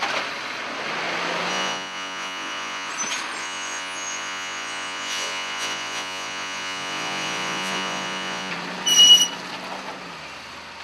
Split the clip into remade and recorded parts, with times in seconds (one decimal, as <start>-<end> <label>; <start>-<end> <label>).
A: 0.0-1.5 recorded; 1.5-2.9 remade; 2.9-3.4 recorded; 3.4-8.5 remade; 8.5-10.8 recorded